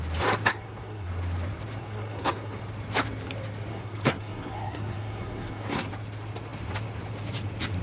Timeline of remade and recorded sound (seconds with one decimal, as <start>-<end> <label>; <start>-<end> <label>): 0.0-0.5 recorded; 0.5-1.1 remade; 1.1-1.8 recorded; 1.8-2.6 remade; 2.6-3.7 recorded; 3.7-5.9 remade; 5.9-7.8 recorded